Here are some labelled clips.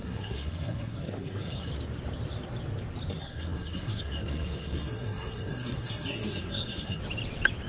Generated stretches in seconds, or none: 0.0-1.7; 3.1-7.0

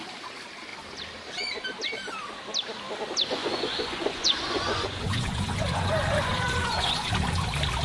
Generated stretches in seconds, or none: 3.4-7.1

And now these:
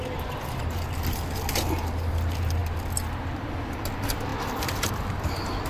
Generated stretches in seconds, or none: 2.6-3.3; 4.3-4.9

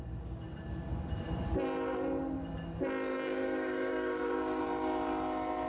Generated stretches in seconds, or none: 3.1-4.6